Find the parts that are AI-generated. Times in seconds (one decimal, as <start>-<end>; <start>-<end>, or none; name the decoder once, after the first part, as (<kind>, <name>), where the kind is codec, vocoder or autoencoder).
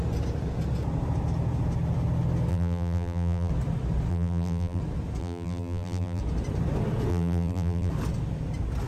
2.5-3.5 (vocoder, BigVGAN v2); 4.1-4.8; 5.2-6.2; 7.1-7.9